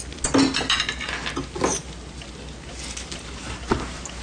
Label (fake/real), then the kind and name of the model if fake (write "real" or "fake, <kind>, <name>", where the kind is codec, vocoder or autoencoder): real